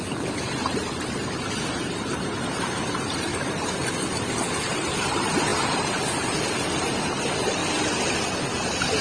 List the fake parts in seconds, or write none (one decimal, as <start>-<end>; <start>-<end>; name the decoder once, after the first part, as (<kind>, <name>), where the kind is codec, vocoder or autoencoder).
0.0-3.3 (vocoder, BigVGAN v2); 4.5-7.6; 8.3-9.0